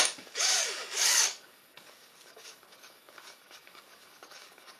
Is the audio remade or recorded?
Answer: remade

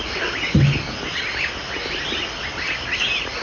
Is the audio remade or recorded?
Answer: recorded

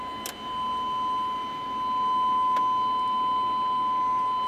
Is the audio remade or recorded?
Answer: recorded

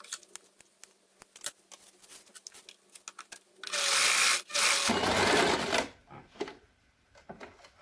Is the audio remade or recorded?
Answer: recorded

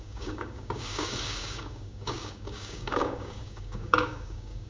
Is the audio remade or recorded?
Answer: remade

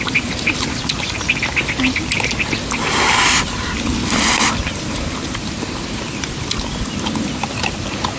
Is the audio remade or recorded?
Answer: recorded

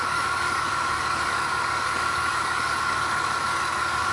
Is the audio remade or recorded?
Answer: remade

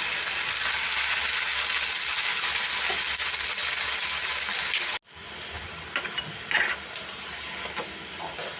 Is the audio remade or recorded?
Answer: recorded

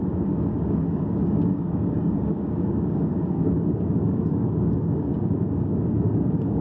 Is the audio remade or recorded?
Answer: remade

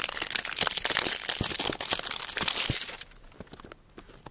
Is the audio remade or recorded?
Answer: recorded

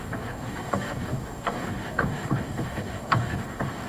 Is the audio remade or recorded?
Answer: remade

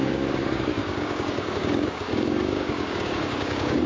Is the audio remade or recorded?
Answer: remade